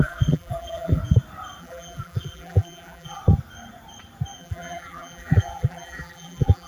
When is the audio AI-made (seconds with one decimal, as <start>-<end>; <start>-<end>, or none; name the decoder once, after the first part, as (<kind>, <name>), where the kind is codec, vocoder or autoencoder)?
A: 0.0-1.0 (vocoder, BigVGAN v2); 1.6-3.2; 4.4-6.7